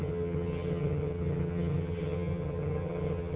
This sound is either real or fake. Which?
fake